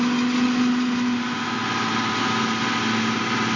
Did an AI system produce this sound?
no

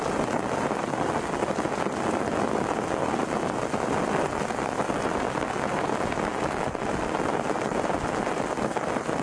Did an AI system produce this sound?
no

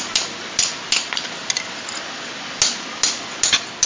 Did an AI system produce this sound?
no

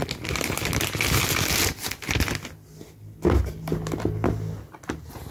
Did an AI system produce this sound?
no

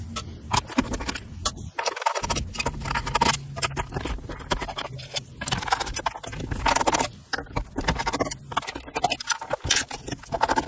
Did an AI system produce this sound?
no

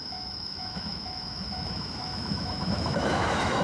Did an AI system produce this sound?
yes